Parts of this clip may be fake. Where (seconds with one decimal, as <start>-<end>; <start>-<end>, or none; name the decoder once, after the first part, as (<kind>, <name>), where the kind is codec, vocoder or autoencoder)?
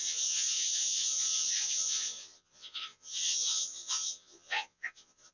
0.0-5.3 (vocoder, Vocos)